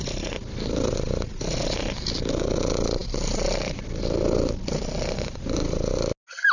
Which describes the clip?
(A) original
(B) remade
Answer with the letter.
A